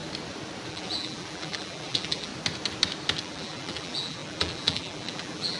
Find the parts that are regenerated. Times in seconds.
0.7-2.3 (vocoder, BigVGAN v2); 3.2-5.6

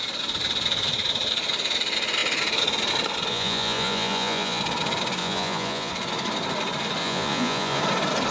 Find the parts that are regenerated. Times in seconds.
3.3-4.6 (vocoder, Vocos); 5.2-5.9; 7.0-7.8

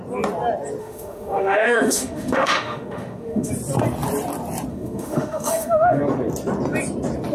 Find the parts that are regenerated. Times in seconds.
0.8-3.5 (autoencoder, DAC-VAE); 4.7-6.0

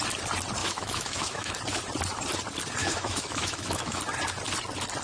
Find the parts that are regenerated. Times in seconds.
0.6-1.5 (autoencoder, DAC-VAE); 2.8-4.0